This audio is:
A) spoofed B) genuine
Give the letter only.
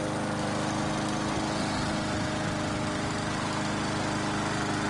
B